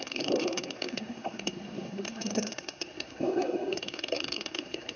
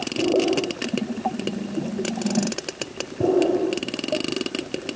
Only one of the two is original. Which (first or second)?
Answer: second